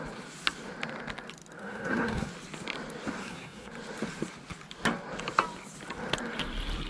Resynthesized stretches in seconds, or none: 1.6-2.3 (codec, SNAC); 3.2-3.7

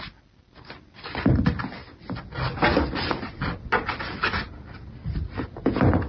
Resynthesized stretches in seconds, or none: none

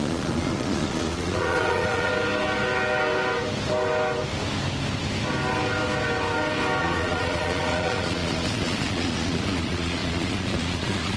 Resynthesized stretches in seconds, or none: 0.0-2.1 (vocoder, Vocos); 6.8-11.2

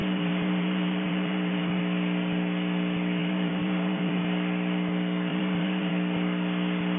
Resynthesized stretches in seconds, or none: 0.0-1.8 (vocoder, BigVGAN v2); 3.2-4.2; 5.3-5.9